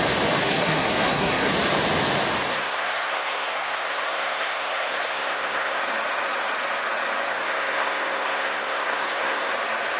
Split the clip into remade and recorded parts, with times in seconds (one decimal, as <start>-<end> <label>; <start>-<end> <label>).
0.0-0.4 recorded; 0.4-1.5 remade; 1.5-2.5 recorded; 2.5-5.8 remade; 5.8-7.3 recorded; 7.3-9.5 remade; 9.5-10.0 recorded

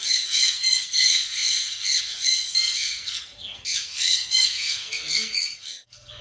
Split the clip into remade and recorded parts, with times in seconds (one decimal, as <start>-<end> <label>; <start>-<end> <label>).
0.0-6.2 remade

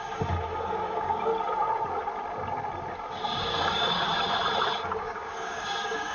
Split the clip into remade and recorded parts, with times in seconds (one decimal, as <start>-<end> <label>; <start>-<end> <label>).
0.0-1.3 remade; 1.3-3.1 recorded; 3.1-4.1 remade; 4.1-4.8 recorded; 4.8-6.1 remade

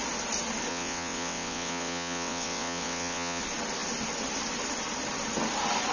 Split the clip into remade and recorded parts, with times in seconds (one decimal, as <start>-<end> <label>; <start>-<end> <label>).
0.0-0.7 recorded; 0.7-3.4 remade; 3.4-5.9 recorded

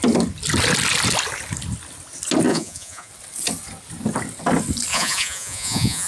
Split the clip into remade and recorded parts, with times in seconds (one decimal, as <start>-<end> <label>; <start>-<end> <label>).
0.0-2.5 recorded; 2.5-3.1 remade; 3.1-4.9 recorded; 4.9-6.1 remade